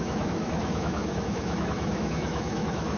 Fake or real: fake